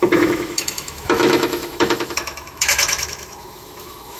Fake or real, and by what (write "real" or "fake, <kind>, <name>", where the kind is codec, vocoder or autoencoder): fake, autoencoder, DAC-VAE